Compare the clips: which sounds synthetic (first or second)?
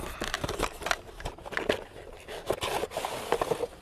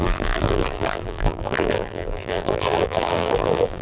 second